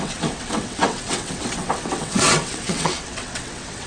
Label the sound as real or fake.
fake